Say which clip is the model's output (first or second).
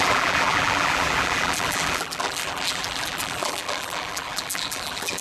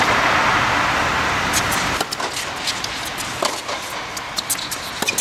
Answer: first